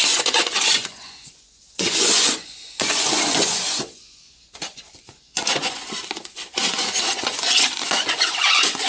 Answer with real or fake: fake